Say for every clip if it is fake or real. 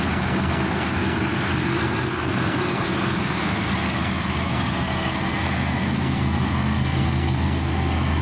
fake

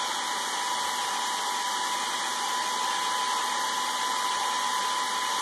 real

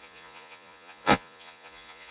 fake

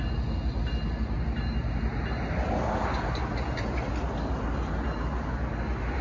real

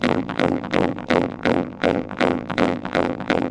fake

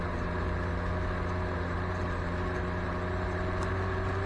real